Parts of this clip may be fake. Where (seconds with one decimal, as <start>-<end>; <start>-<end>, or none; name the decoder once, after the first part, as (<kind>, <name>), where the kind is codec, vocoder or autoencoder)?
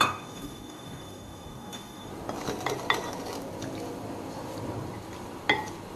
0.0-2.1 (codec, DAC)